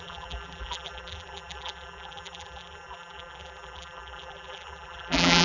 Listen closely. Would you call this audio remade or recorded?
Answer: remade